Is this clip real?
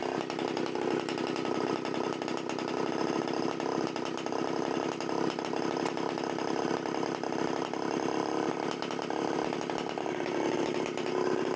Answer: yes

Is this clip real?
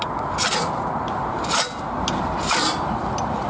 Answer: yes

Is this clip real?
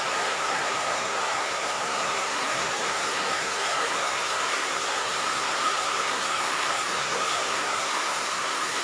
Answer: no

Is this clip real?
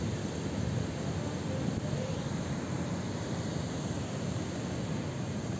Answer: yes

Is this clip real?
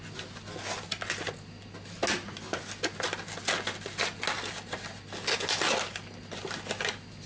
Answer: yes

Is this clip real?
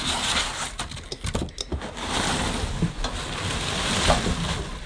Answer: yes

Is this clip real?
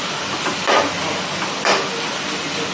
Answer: yes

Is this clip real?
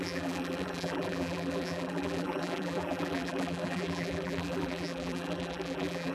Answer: no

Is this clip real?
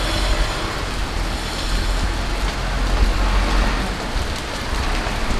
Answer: yes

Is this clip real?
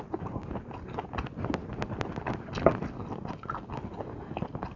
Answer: yes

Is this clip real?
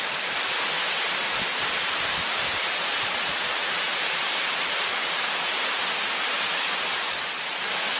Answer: yes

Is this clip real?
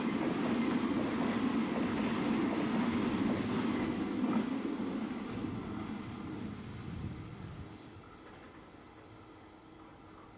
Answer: yes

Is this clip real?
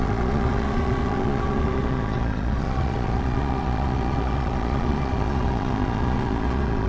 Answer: no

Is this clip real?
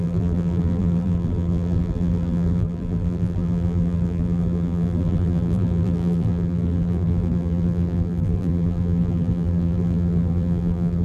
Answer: no